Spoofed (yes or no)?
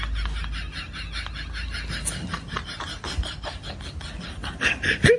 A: no